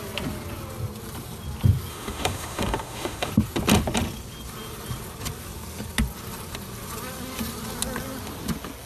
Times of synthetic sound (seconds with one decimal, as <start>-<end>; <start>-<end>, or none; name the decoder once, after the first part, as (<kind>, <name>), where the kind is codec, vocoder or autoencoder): 1.9-3.3 (autoencoder, DAC-VAE)